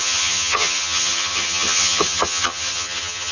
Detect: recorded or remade remade